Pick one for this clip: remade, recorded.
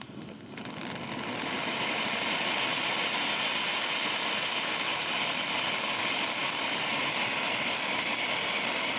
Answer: recorded